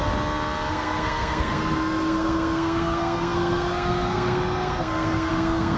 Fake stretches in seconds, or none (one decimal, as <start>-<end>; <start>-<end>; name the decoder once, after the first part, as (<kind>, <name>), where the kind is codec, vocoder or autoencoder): 0.7-5.8 (codec, SNAC)